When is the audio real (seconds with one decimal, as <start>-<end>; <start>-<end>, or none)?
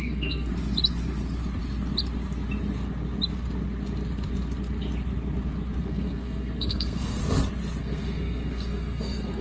0.5-5.8; 7.2-7.8